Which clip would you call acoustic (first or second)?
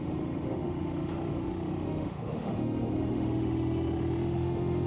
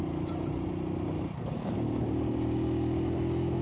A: second